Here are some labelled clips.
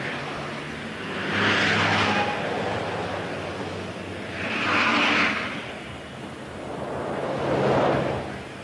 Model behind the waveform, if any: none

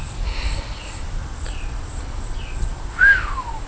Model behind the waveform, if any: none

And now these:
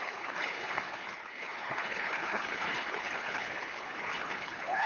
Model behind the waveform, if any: codec, HILCodec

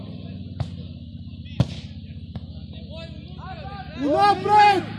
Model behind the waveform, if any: none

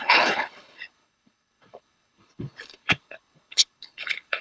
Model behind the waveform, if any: codec, HILCodec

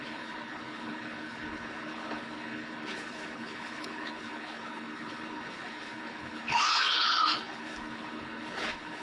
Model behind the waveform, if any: codec, HILCodec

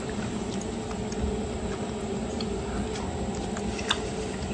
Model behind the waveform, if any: none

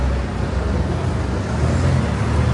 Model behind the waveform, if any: none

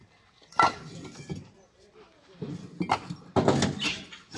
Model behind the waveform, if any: none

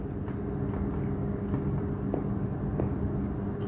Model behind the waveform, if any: none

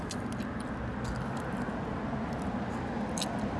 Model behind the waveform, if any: none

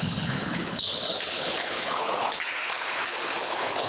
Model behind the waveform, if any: codec, HILCodec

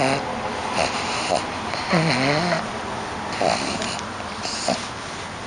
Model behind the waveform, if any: none